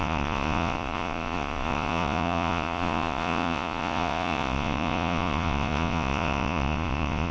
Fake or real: fake